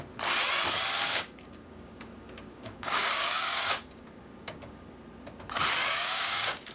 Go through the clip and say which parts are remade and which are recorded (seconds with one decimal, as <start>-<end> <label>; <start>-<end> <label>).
0.0-0.9 recorded; 0.9-4.9 remade; 4.9-5.8 recorded; 5.8-6.7 remade

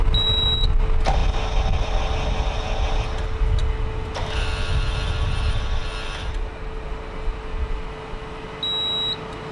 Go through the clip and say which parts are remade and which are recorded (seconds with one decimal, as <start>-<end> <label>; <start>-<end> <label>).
0.0-9.5 recorded

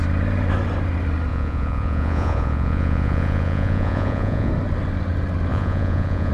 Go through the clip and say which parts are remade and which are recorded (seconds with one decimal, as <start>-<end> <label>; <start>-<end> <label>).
0.0-1.3 recorded; 1.3-4.5 remade; 4.5-5.5 recorded; 5.5-6.3 remade

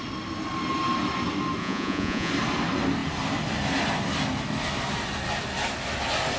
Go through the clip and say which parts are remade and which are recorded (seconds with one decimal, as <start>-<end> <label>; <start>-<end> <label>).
0.0-1.6 recorded; 1.6-2.3 remade; 2.3-6.4 recorded

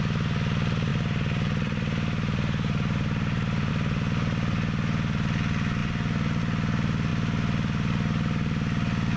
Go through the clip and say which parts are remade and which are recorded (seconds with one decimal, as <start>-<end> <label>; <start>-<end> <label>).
0.0-0.9 recorded; 0.9-3.7 remade; 3.7-9.2 recorded

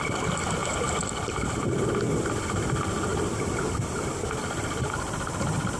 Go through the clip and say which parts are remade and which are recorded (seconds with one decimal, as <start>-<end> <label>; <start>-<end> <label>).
0.0-0.6 recorded; 0.6-1.9 remade; 1.9-5.8 recorded

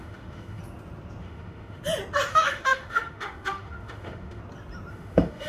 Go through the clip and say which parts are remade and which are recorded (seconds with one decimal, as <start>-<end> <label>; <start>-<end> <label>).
0.0-0.6 remade; 0.6-1.2 recorded; 1.2-1.8 remade; 1.8-2.3 recorded; 2.3-4.4 remade; 4.4-4.9 recorded; 4.9-5.5 remade

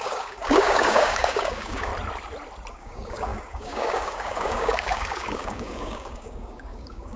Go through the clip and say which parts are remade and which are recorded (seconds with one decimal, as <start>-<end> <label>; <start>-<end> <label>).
0.0-1.9 remade; 1.9-2.7 recorded; 2.7-7.2 remade